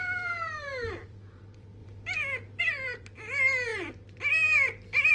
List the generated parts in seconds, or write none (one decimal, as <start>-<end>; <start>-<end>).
0.0-5.1